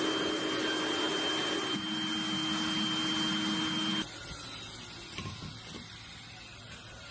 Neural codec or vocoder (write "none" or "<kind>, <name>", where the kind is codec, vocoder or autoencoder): none